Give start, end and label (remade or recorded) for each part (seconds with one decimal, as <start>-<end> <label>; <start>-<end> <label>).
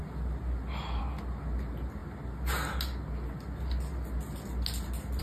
0.0-5.2 recorded